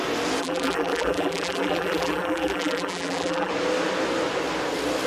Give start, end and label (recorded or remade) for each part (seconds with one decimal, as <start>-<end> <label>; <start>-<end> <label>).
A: 0.0-0.4 recorded; 0.4-3.5 remade; 3.5-5.1 recorded